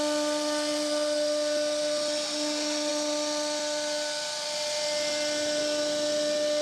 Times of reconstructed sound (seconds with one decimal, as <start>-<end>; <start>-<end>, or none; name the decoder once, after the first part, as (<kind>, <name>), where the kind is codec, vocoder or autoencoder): none